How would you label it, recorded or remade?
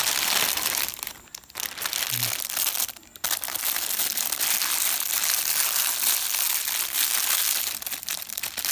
recorded